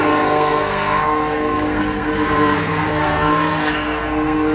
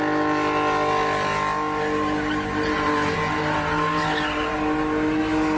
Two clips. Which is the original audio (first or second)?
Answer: second